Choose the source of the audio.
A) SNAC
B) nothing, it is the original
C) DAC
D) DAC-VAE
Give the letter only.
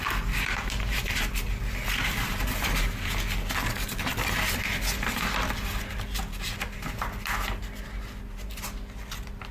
B